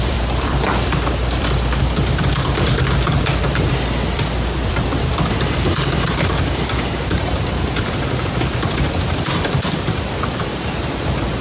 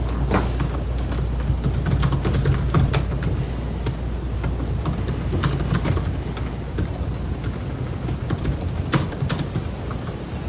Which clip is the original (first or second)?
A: second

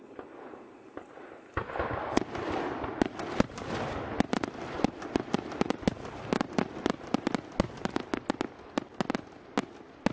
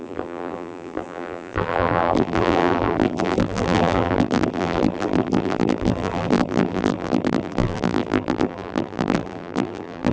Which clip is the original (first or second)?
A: first